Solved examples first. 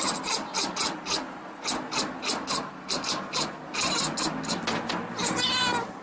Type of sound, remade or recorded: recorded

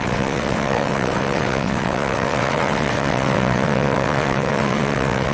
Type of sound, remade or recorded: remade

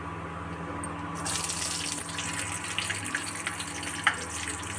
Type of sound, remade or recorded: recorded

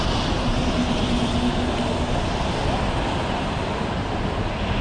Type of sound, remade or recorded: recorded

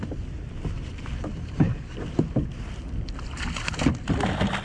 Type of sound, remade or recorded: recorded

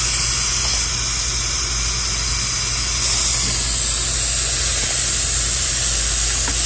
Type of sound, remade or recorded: recorded